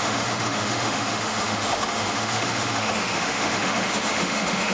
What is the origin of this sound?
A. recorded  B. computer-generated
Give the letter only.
B